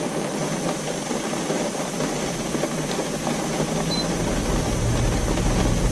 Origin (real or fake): real